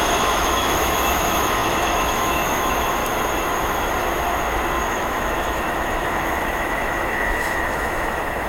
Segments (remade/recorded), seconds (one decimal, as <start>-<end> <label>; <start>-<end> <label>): 0.0-3.0 remade; 3.0-4.9 recorded; 4.9-8.5 remade